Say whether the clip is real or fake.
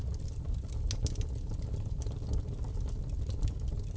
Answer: real